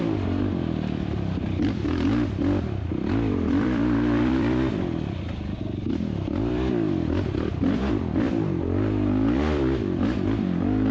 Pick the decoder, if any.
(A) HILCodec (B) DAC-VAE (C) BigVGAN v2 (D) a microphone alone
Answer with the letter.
C